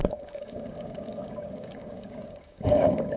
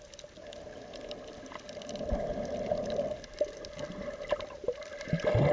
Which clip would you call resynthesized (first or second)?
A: first